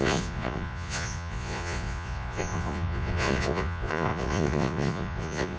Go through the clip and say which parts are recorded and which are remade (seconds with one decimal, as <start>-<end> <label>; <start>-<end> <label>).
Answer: 0.0-5.6 remade